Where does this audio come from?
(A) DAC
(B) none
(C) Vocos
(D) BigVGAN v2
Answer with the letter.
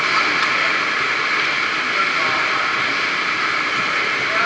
B